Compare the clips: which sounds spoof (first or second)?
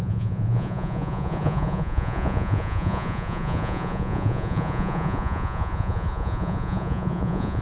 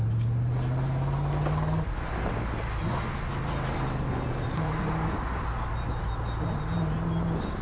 first